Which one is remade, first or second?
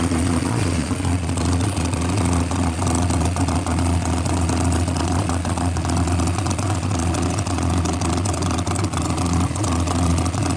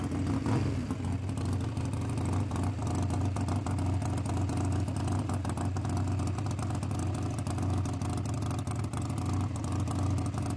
first